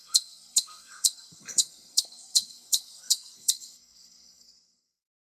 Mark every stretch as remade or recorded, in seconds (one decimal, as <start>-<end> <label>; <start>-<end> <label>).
0.0-5.4 remade